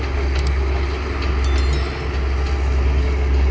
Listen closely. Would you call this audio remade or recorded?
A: recorded